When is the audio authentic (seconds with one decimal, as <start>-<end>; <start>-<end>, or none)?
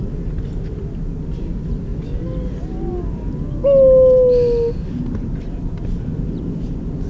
0.0-7.1